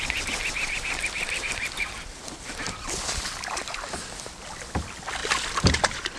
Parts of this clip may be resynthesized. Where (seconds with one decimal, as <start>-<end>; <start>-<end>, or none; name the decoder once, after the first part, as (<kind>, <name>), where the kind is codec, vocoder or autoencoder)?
0.0-6.2 (vocoder, BigVGAN v2)